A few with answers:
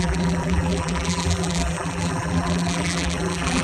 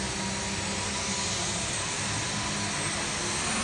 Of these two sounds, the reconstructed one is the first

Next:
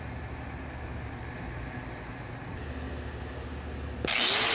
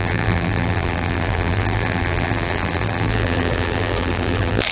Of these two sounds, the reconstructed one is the second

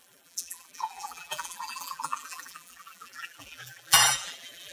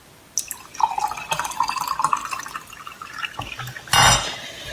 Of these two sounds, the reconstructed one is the first